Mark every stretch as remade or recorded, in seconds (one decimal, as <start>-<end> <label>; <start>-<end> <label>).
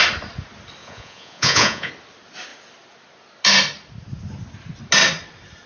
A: 0.0-0.8 recorded; 0.8-1.9 remade; 1.9-5.7 recorded